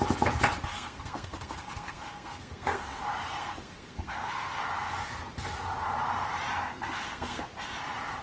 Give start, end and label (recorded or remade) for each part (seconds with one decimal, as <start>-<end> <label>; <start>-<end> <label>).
0.0-0.7 recorded; 0.7-3.0 remade; 3.0-3.4 recorded; 3.4-4.6 remade; 4.6-6.7 recorded; 6.7-7.4 remade; 7.4-8.2 recorded

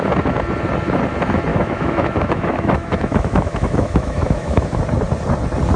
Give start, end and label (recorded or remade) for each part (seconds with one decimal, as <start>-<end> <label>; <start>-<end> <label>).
0.0-1.5 recorded; 1.5-4.8 remade; 4.8-5.8 recorded